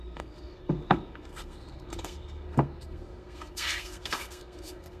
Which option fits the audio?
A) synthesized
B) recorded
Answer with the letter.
A